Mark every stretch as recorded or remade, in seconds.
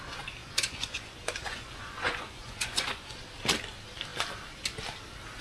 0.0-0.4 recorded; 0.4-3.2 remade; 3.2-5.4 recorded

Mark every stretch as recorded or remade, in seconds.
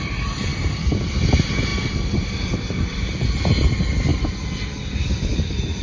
0.0-5.8 recorded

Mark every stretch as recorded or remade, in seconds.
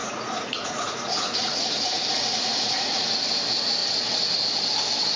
0.0-3.1 remade; 3.1-5.2 recorded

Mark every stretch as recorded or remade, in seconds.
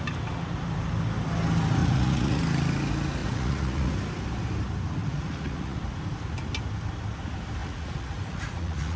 0.0-1.8 recorded; 1.8-2.4 remade; 2.4-3.2 recorded; 3.2-3.9 remade; 3.9-5.0 recorded; 5.0-5.8 remade; 5.8-7.6 recorded; 7.6-9.0 remade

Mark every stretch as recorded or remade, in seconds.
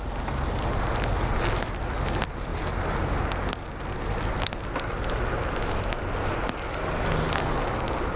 0.0-8.2 recorded